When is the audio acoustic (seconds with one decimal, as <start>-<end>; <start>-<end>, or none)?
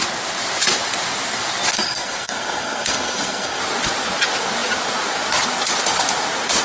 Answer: 0.0-1.7; 3.6-6.6